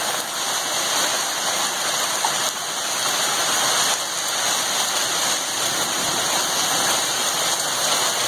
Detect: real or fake real